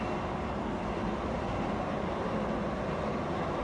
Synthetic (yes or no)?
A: no